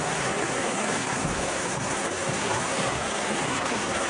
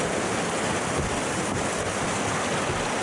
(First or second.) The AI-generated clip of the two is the first